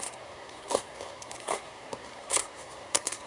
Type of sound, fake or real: fake